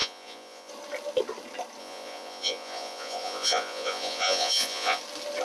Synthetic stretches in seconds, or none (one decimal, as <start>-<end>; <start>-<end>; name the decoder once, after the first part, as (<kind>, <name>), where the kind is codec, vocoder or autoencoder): 0.0-0.7 (vocoder, Vocos); 1.8-5.0